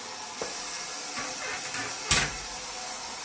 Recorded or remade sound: recorded